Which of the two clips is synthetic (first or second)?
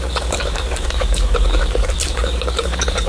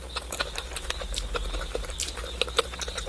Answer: first